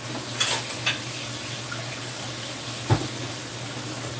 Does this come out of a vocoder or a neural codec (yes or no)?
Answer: no